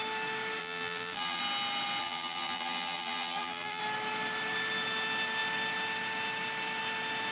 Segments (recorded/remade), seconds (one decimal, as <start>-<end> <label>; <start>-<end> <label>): 0.0-0.6 recorded; 0.6-1.4 remade; 1.4-2.0 recorded; 2.0-3.8 remade; 3.8-7.3 recorded

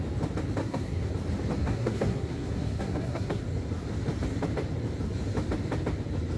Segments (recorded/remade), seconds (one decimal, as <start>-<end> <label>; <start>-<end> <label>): 0.0-0.6 recorded; 0.6-1.1 remade; 1.1-1.6 recorded; 1.6-3.4 remade; 3.4-6.4 recorded

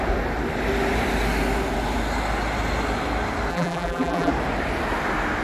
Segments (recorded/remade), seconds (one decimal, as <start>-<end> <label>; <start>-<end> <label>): 0.0-3.5 recorded; 3.5-4.3 remade; 4.3-5.4 recorded

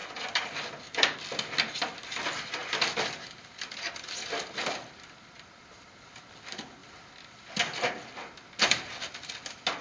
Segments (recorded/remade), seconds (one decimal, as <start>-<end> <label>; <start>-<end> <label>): 0.0-1.3 remade; 1.3-2.6 recorded; 2.6-5.6 remade; 5.6-9.8 recorded

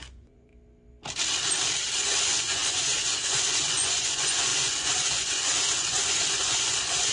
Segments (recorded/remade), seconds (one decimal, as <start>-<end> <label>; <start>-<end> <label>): 0.0-0.5 remade; 0.5-2.0 recorded; 2.0-7.1 remade

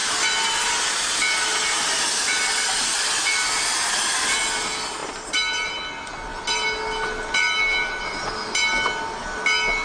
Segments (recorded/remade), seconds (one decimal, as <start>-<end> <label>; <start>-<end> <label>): 0.0-9.8 recorded

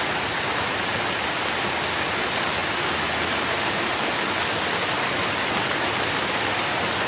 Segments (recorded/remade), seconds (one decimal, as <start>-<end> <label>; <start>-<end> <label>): 0.0-7.1 recorded

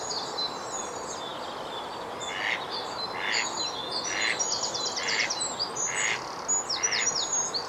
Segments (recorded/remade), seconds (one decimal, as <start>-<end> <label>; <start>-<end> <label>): 0.0-7.7 recorded